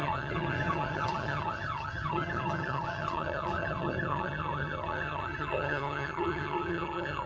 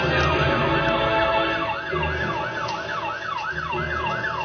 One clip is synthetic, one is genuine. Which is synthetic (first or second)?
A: first